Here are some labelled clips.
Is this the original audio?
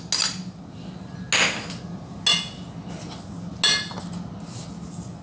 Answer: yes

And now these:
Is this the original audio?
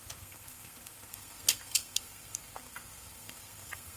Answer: no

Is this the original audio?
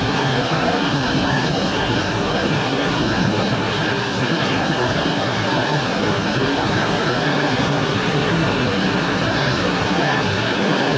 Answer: no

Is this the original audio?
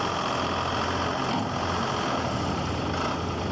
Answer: yes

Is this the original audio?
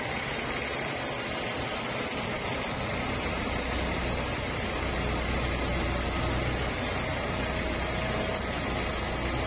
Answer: yes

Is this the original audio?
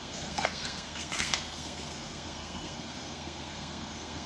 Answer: no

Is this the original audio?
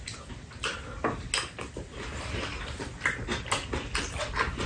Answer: yes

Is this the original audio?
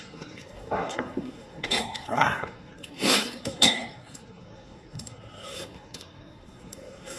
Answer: no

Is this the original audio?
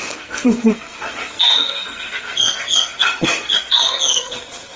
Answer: no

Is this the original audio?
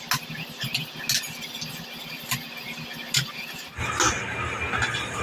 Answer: yes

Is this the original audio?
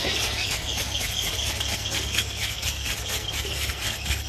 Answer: no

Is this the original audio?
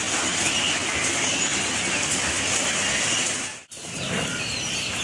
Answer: yes